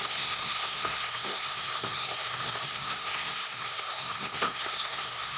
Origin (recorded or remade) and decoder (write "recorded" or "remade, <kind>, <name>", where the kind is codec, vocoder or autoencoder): remade, codec, SNAC